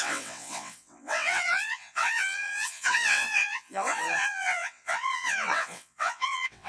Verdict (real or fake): fake